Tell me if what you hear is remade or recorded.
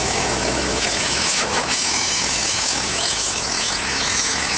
remade